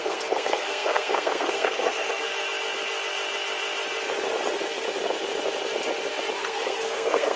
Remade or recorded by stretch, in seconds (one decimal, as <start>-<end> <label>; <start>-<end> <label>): 0.0-2.3 remade; 2.3-6.4 recorded; 6.4-7.4 remade